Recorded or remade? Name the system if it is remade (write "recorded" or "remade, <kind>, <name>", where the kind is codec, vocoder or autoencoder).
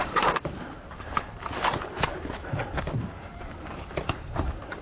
remade, vocoder, BigVGAN v2